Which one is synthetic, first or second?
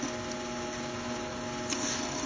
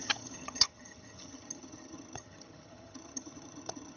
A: second